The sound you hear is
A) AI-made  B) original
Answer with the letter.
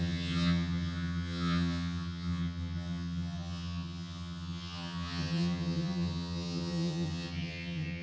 A